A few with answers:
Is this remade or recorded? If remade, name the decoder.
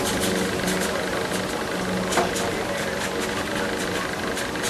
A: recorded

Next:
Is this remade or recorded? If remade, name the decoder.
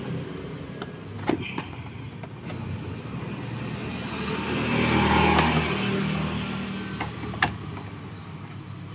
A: recorded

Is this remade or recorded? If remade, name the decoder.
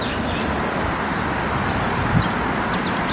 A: recorded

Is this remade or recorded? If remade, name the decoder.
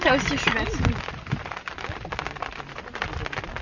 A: recorded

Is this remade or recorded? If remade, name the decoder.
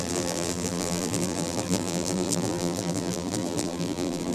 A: remade, vocoder, BigVGAN v2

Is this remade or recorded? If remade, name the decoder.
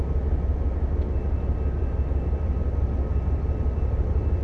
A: recorded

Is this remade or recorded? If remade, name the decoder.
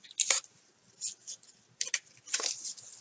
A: recorded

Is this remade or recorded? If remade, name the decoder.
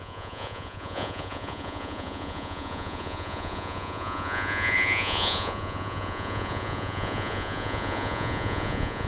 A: remade, vocoder, Vocos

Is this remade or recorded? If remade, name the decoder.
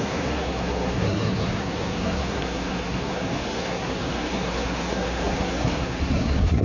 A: remade, codec, SNAC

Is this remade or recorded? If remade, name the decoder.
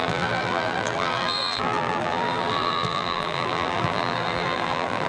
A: remade, vocoder, BigVGAN v2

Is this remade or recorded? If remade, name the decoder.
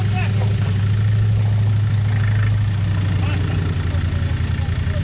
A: recorded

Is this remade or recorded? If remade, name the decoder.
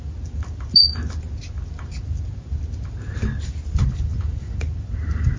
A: recorded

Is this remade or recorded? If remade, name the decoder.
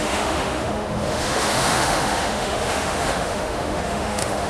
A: remade, autoencoder, DAC-VAE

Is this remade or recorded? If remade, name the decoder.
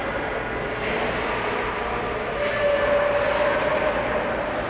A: recorded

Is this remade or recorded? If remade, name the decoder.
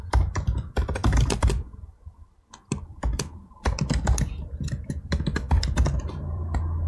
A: remade, vocoder, BigVGAN v2